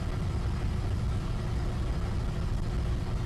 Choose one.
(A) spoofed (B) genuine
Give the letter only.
B